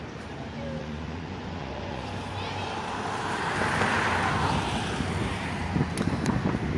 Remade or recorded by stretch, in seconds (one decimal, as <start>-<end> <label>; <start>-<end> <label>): 0.0-0.8 recorded; 0.8-2.1 remade; 2.1-6.8 recorded